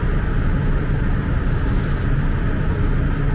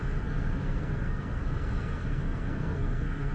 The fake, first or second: second